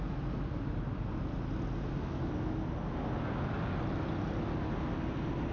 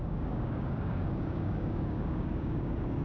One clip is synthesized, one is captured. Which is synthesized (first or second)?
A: second